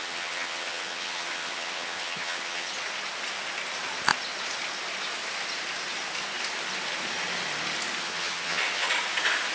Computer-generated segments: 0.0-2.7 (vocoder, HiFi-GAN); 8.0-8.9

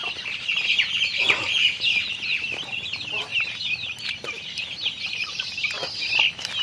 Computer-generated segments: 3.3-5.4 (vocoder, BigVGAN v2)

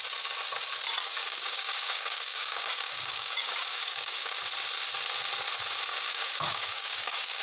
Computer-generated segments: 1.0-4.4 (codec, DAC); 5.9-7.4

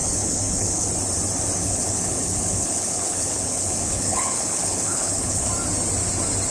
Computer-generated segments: 0.0-0.9 (codec, HILCodec); 1.6-5.5